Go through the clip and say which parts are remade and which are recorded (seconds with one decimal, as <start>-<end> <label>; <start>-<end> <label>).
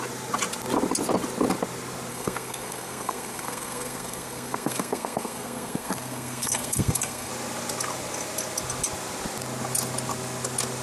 0.0-2.1 recorded; 2.1-7.3 remade; 7.3-10.8 recorded